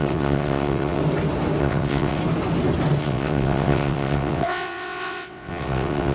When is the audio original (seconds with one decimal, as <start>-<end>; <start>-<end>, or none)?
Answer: 1.0-1.6; 2.2-3.0